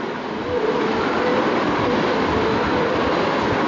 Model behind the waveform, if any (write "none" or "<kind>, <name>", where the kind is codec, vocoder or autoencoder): none